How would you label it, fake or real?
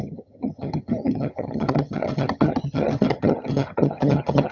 fake